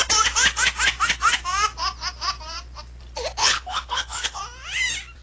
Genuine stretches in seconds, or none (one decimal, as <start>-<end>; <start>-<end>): 0.0-3.4; 4.4-5.2